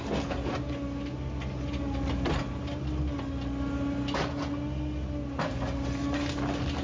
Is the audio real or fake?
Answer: real